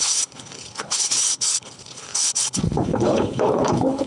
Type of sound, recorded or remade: remade